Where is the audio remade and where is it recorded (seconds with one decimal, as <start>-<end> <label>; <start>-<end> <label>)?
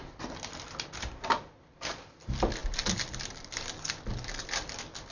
0.0-5.1 recorded